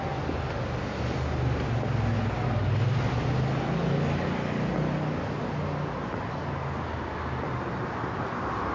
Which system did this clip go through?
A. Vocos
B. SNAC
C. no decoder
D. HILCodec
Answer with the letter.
C